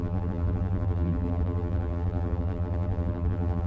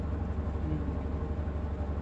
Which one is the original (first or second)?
second